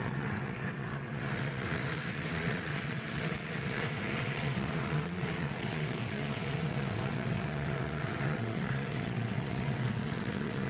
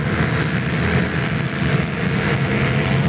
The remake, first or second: first